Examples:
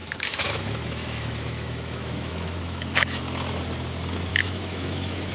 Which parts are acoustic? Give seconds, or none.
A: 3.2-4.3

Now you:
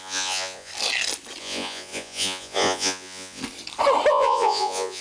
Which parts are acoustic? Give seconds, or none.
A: 0.7-1.4; 3.4-4.1

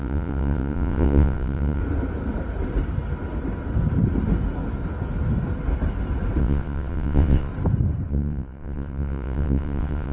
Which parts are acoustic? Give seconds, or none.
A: 1.8-6.4; 7.5-8.1

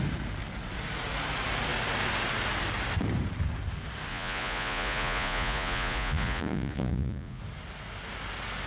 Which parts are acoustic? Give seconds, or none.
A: 0.0-4.1; 7.4-8.7